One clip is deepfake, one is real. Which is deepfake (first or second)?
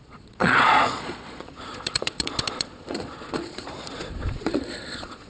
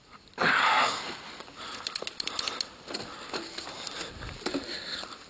first